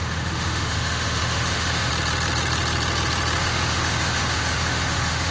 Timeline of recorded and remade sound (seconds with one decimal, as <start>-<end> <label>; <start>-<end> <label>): 0.0-1.9 remade; 1.9-3.4 recorded; 3.4-5.3 remade

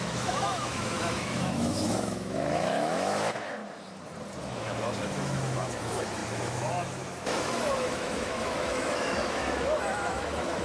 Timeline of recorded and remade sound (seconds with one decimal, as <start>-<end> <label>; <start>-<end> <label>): 0.0-3.6 remade; 3.6-4.4 recorded; 4.4-10.6 remade

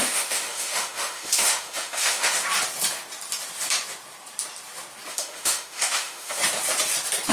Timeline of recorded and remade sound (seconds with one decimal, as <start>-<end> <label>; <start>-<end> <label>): 0.0-2.4 remade; 2.4-5.1 recorded; 5.1-6.4 remade; 6.4-7.3 recorded

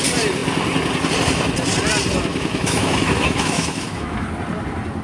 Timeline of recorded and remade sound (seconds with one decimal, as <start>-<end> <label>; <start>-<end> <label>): 0.0-2.3 recorded; 2.3-4.3 remade; 4.3-5.0 recorded

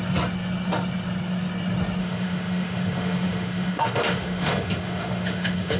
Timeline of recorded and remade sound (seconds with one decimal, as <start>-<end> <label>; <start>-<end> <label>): 0.0-2.0 recorded; 2.0-5.8 remade